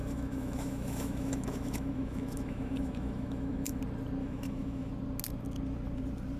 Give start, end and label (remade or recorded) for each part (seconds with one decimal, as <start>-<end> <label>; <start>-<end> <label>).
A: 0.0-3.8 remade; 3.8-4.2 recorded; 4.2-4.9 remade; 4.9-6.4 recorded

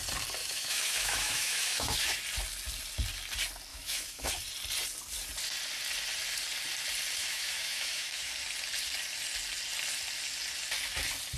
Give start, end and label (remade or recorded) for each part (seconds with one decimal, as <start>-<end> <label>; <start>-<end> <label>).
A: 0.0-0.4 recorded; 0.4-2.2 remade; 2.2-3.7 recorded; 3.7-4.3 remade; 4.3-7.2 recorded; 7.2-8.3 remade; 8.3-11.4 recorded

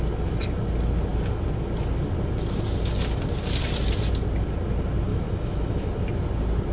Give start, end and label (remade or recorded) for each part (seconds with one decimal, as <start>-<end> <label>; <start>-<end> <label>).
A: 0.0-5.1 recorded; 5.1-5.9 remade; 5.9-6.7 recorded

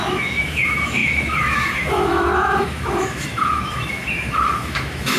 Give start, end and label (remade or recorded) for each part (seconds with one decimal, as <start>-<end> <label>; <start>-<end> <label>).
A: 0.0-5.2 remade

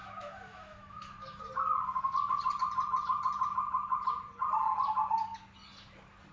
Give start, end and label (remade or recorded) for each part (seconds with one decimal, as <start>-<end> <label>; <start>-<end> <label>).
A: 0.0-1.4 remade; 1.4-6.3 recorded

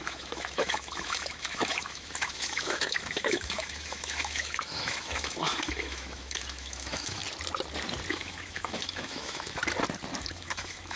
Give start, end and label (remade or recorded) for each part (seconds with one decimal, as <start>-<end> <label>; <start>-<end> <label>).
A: 0.0-7.2 remade; 7.2-8.1 recorded; 8.1-9.6 remade; 9.6-10.2 recorded; 10.2-11.0 remade